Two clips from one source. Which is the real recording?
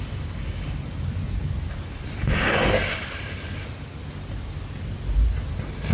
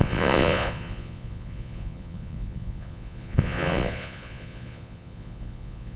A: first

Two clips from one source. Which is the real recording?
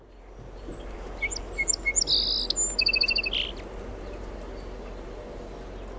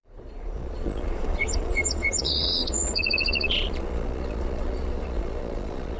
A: first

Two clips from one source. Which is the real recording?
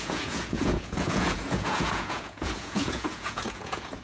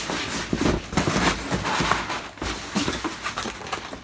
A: second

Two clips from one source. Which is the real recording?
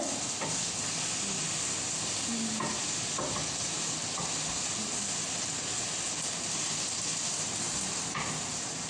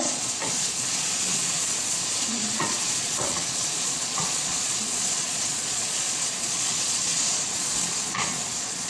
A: first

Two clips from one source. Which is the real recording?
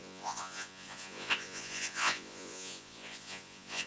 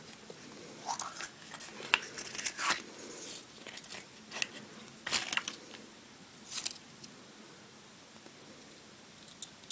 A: second